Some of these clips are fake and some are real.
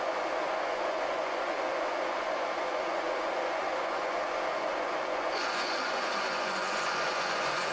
fake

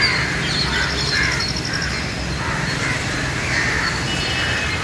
real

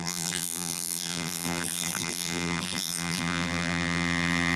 fake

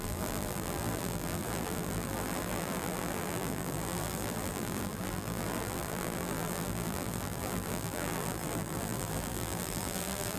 fake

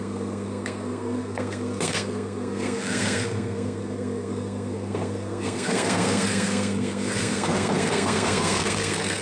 fake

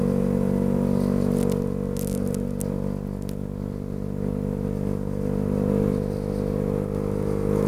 real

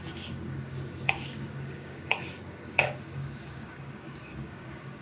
fake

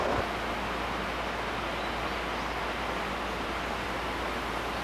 real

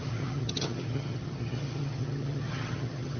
fake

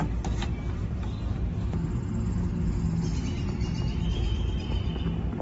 real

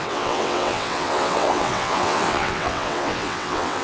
fake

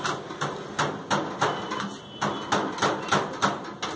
real